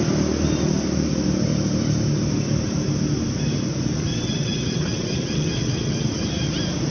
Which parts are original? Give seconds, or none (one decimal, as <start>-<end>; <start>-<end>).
0.0-4.1; 6.3-6.9